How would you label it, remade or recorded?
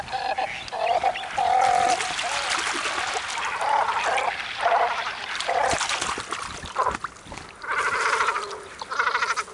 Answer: recorded